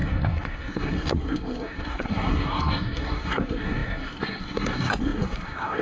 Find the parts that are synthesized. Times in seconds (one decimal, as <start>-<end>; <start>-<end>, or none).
0.0-5.8